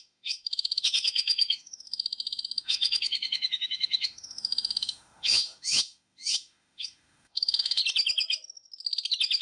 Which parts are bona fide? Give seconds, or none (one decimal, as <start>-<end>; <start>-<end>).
7.8-9.4

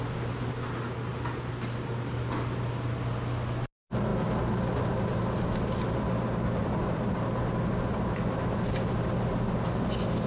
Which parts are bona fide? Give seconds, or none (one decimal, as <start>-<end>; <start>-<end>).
0.0-6.6; 7.3-10.3

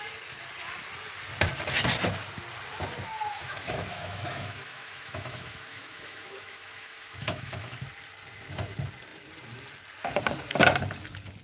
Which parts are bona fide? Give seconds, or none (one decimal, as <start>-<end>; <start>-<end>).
0.0-3.3; 7.7-11.4

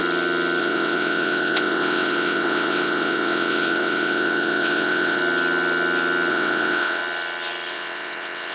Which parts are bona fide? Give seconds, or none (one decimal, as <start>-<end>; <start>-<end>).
0.0-0.6; 5.2-6.3; 7.0-7.7

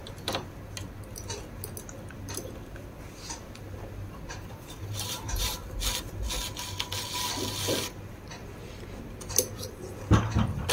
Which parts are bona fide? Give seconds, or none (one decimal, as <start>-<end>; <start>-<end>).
0.0-4.5; 5.6-10.7

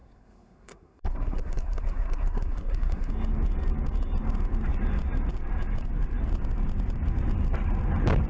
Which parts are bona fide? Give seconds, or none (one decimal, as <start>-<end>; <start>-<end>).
3.1-8.3